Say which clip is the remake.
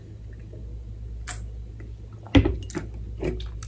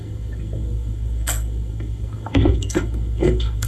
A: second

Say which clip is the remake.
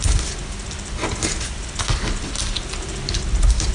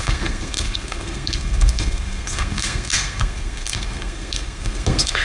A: second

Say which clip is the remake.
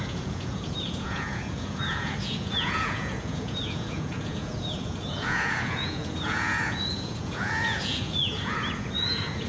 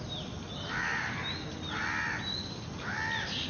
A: first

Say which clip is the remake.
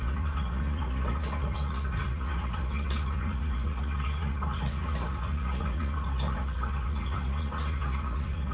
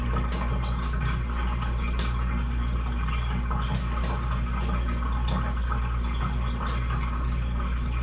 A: first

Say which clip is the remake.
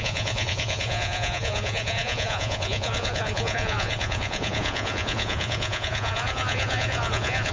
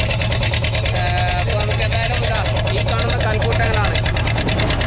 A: first